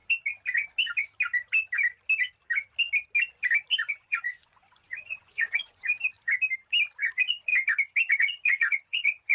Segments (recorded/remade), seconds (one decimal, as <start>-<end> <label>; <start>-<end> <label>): 0.0-3.9 recorded; 3.9-5.9 remade; 5.9-7.1 recorded; 7.1-7.5 remade; 7.5-8.1 recorded; 8.1-9.3 remade